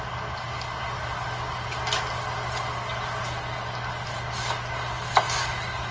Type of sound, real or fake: real